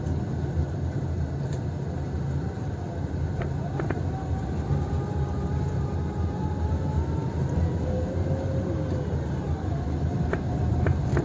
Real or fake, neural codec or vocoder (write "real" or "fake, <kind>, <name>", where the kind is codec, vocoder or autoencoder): real